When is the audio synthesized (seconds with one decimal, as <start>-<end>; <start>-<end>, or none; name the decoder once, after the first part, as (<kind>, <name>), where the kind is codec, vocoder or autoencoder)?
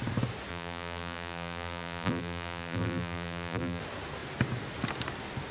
0.5-3.8 (vocoder, BigVGAN v2)